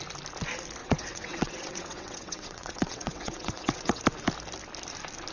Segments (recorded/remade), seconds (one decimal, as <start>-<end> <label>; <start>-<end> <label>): 0.0-0.8 recorded; 0.8-4.0 remade; 4.0-5.3 recorded